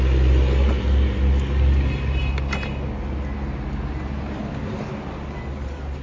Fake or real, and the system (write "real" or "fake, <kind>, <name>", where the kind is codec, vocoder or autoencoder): real